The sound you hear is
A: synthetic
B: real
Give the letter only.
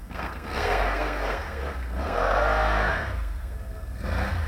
A